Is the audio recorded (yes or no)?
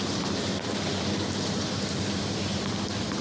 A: yes